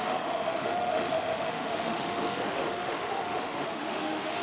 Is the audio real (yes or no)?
no